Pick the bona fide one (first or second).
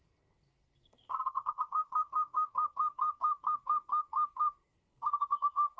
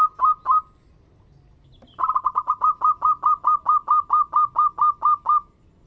second